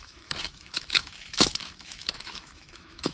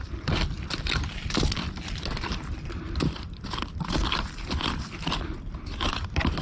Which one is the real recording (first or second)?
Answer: second